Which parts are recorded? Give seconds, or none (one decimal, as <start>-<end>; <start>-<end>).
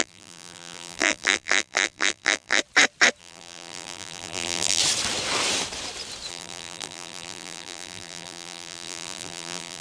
2.6-3.2; 4.8-6.3